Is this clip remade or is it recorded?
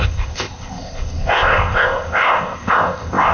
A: remade